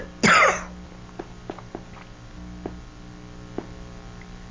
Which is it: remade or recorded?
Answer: recorded